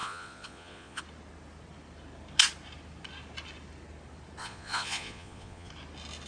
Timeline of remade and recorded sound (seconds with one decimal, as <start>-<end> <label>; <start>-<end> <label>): 0.0-1.0 remade; 1.0-4.4 recorded; 4.4-5.7 remade; 5.7-6.3 recorded

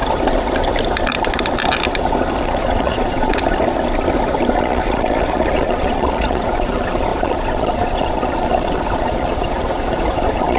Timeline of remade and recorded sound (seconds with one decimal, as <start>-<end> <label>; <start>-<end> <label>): 0.0-2.4 recorded; 2.4-3.4 remade; 3.4-4.5 recorded; 4.5-10.6 remade

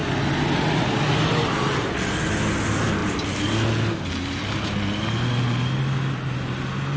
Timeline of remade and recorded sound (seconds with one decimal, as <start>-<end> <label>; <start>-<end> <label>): 0.0-7.0 recorded

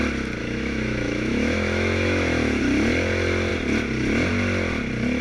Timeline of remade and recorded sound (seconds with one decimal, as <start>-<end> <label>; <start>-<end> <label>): 0.0-0.4 recorded; 0.4-2.6 remade; 2.6-5.2 recorded

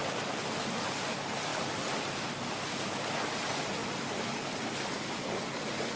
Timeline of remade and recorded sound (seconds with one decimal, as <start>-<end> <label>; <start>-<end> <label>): 0.0-6.0 recorded

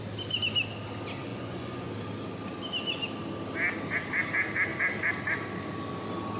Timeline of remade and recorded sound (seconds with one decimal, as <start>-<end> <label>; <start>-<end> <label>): 0.0-1.3 recorded; 1.3-1.9 remade; 1.9-6.4 recorded